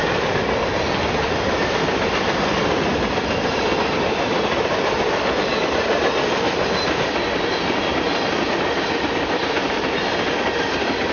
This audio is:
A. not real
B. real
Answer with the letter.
A